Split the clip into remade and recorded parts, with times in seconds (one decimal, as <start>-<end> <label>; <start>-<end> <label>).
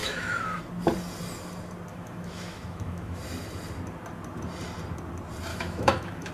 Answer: 0.0-0.6 remade; 0.6-1.9 recorded; 1.9-3.2 remade; 3.2-5.5 recorded; 5.5-6.3 remade